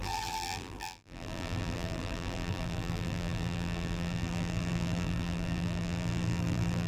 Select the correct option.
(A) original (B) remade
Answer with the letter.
B